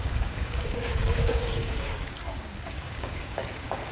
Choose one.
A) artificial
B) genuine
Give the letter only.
A